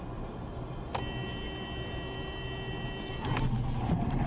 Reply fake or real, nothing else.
real